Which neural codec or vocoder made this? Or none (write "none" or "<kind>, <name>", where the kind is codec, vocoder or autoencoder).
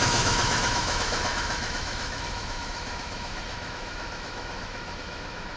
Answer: autoencoder, DAC-VAE